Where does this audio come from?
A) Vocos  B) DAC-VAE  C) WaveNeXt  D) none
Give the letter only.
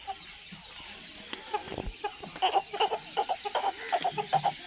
D